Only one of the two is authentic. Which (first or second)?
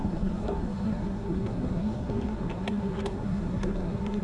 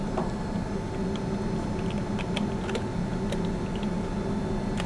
second